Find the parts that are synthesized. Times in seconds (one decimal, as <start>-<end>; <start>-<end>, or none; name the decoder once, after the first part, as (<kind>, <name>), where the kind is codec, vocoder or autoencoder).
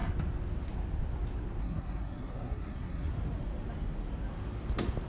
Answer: 1.6-3.1 (codec, SNAC)